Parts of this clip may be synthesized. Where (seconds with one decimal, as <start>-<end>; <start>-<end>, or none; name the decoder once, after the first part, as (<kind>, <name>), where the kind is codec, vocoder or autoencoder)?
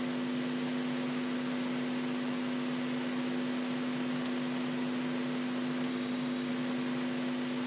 5.9-6.5 (codec, DAC)